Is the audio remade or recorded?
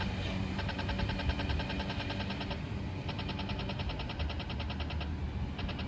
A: recorded